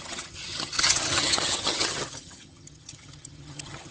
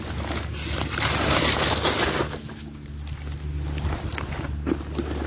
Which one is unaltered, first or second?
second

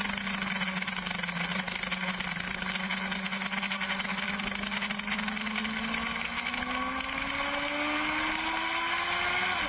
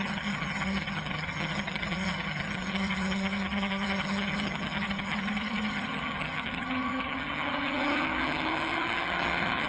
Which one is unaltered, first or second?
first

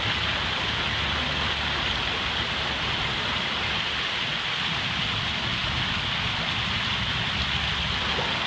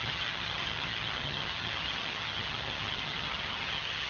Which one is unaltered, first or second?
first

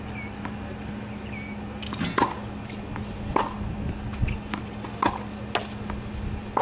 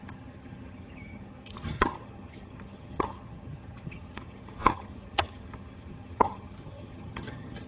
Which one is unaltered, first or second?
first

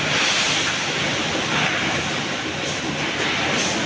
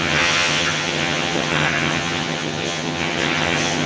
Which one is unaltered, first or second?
first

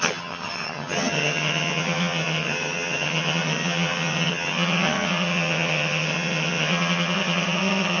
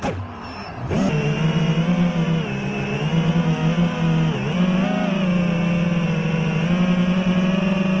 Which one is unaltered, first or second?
second